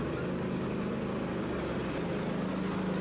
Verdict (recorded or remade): recorded